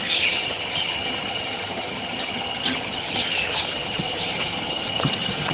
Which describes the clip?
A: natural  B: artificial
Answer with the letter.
B